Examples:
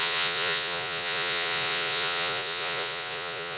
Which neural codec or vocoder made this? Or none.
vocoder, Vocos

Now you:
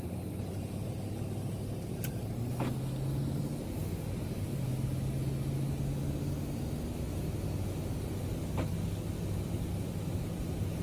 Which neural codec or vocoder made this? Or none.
none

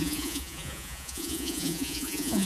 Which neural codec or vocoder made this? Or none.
vocoder, Vocos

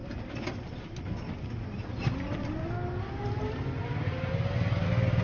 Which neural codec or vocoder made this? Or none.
none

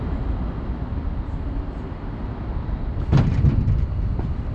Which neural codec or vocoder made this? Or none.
none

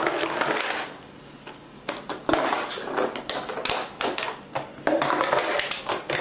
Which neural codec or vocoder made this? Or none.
none